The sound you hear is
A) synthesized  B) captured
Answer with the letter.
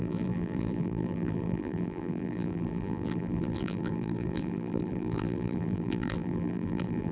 A